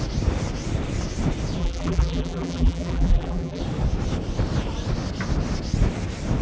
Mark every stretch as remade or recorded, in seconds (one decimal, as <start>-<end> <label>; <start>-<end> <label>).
0.0-1.6 recorded; 1.6-3.6 remade; 3.6-6.4 recorded